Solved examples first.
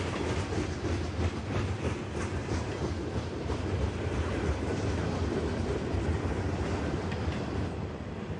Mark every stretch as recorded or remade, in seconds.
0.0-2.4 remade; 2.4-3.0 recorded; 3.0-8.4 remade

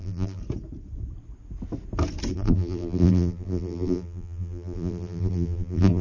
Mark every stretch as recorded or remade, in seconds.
0.0-0.4 remade; 0.4-2.3 recorded; 2.3-6.0 remade

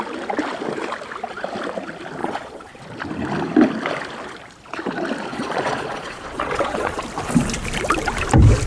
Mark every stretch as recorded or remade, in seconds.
0.0-2.2 recorded; 2.2-2.8 remade; 2.8-5.3 recorded; 5.3-7.0 remade; 7.0-8.7 recorded